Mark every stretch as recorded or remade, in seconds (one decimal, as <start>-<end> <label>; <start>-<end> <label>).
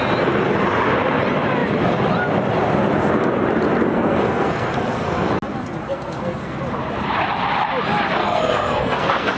0.0-3.9 recorded; 3.9-5.3 remade; 5.3-5.8 recorded; 5.8-6.6 remade; 6.6-8.2 recorded; 8.2-9.4 remade